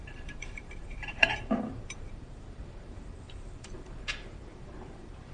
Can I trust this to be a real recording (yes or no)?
no